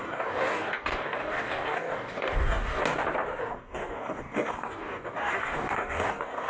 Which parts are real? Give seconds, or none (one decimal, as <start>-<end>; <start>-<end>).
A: 2.8-3.4

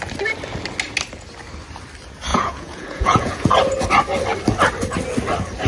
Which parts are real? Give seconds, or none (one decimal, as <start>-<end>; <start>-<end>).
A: 0.0-2.3; 3.5-5.7